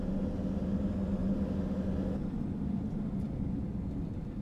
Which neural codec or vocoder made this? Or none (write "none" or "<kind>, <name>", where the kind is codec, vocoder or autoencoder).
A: none